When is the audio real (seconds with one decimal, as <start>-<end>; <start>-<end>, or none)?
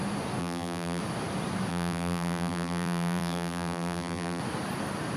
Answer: 0.0-0.4; 1.0-1.7; 4.4-5.2